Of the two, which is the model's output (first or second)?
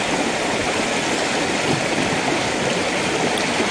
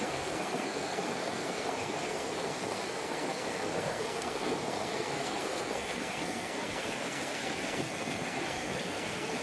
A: second